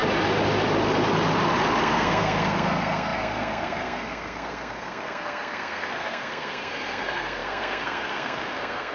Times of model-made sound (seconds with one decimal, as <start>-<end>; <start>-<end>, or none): 1.8-8.9